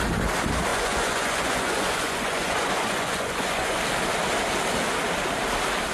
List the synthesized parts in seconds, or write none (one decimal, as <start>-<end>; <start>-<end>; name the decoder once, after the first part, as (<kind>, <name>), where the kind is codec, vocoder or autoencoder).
0.7-3.8 (vocoder, Vocos)